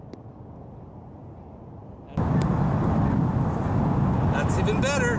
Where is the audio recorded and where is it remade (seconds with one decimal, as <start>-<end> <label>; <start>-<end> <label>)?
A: 0.0-5.2 recorded